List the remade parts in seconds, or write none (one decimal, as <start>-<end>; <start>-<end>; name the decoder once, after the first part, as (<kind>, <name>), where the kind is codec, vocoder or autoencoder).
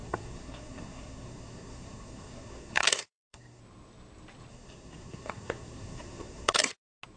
0.0-3.6 (codec, SNAC); 4.5-6.7